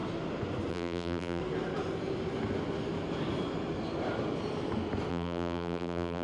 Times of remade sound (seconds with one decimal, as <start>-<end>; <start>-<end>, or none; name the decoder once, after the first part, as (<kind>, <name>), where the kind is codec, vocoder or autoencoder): 0.7-1.4 (vocoder, BigVGAN v2); 5.1-6.2